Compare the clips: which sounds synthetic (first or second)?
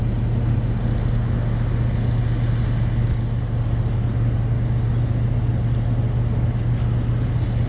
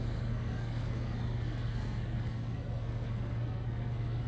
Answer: second